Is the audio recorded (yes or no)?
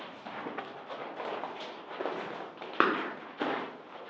yes